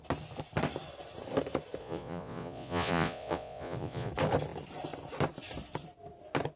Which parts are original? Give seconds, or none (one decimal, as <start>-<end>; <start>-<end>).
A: 0.0-1.8; 4.1-6.6